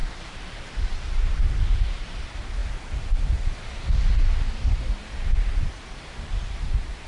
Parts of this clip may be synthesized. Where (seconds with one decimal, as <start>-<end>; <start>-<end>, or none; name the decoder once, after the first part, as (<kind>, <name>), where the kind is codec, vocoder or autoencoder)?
0.0-1.6 (vocoder, BigVGAN v2)